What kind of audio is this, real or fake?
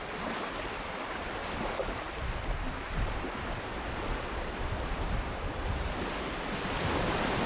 fake